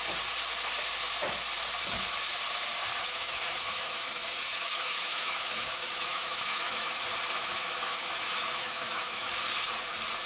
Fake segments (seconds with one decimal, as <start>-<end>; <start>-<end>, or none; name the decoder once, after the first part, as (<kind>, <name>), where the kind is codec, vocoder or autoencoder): 2.9-7.0 (autoencoder, DAC-VAE); 7.4-9.3